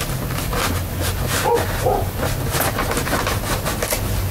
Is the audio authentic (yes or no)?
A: yes